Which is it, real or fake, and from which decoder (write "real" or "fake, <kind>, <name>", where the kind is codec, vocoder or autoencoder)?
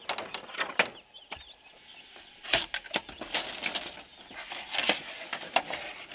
real